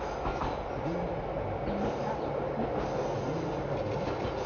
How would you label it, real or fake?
real